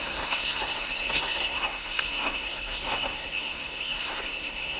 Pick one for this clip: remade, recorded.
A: remade